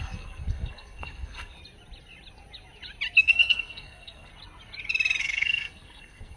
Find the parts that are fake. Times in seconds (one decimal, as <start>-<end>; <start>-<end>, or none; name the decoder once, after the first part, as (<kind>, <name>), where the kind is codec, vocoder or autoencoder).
0.0-1.6 (codec, SNAC); 3.2-4.3; 5.2-6.4